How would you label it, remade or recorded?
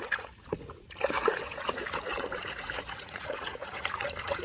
remade